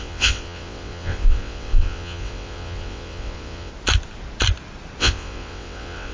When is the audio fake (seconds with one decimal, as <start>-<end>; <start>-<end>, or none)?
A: 0.0-3.7; 5.0-6.1